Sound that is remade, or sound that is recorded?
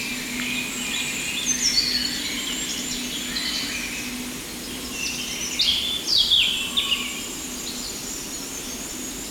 recorded